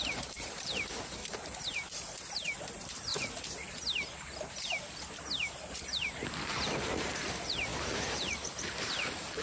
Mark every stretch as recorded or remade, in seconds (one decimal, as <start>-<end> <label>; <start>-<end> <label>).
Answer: 0.0-1.2 remade; 1.2-2.6 recorded; 2.6-3.1 remade; 3.1-5.8 recorded; 5.8-9.4 remade